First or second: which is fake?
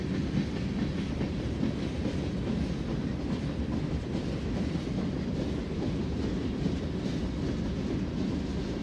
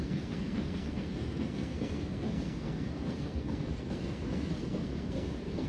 second